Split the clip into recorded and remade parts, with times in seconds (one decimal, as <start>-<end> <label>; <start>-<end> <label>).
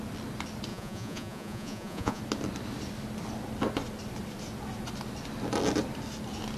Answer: 0.0-0.7 recorded; 0.7-2.2 remade; 2.2-6.6 recorded